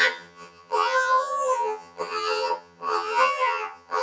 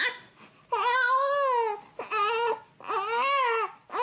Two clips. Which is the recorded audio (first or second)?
second